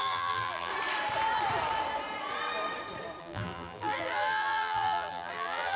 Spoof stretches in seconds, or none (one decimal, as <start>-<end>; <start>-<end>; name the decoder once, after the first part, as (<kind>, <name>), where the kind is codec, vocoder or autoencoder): 0.0-0.7 (vocoder, BigVGAN v2); 3.2-5.8